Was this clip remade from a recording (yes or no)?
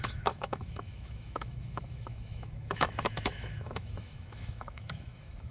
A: yes